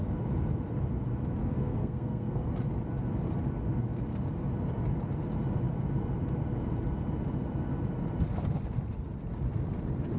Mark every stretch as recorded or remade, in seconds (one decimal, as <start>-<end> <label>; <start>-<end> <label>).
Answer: 0.0-1.4 recorded; 1.4-2.5 remade; 2.5-10.2 recorded

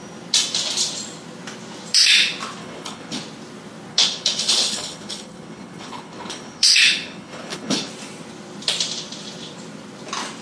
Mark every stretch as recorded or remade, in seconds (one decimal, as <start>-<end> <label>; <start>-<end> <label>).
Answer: 0.0-2.6 recorded; 2.6-3.2 remade; 3.2-3.9 recorded; 3.9-7.9 remade; 7.9-10.4 recorded

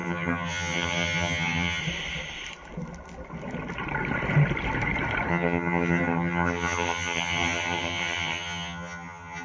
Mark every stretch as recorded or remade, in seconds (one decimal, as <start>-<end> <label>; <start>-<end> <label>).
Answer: 0.0-1.8 remade; 1.8-5.3 recorded; 5.3-9.4 remade

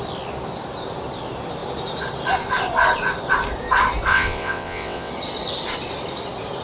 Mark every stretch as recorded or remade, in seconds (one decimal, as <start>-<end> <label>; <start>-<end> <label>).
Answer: 0.0-4.1 recorded; 4.1-5.1 remade; 5.1-6.6 recorded

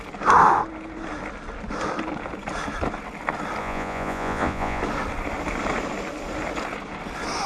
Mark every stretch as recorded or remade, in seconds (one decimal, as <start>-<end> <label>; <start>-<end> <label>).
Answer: 0.0-3.6 recorded; 3.6-4.8 remade; 4.8-7.5 recorded

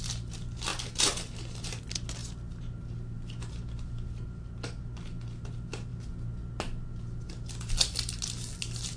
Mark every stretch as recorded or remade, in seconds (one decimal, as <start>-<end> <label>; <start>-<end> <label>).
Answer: 0.0-9.0 recorded

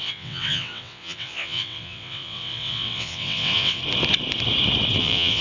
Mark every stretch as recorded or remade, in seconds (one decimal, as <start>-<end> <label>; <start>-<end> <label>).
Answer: 0.0-3.8 remade; 3.8-5.0 recorded; 5.0-5.4 remade

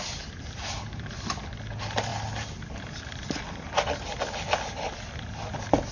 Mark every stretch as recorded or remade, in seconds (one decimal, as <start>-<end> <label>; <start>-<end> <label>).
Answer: 0.0-5.9 recorded